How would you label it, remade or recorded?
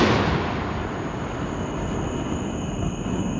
recorded